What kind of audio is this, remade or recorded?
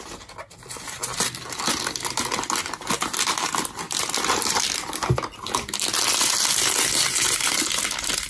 recorded